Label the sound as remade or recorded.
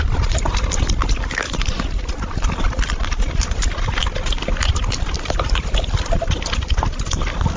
recorded